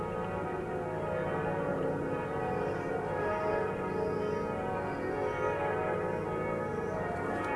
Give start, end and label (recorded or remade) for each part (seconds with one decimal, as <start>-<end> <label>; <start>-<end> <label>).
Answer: 0.0-1.7 recorded; 1.7-3.3 remade; 3.3-6.7 recorded; 6.7-7.6 remade